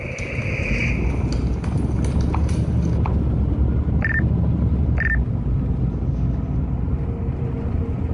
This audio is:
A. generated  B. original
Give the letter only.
B